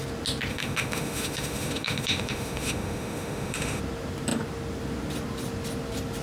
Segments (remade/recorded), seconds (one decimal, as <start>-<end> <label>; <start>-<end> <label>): 0.0-0.5 recorded; 0.5-3.8 remade; 3.8-6.2 recorded